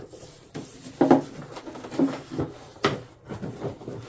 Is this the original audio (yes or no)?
yes